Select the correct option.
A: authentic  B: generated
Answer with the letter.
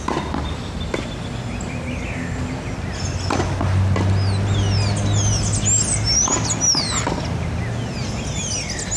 A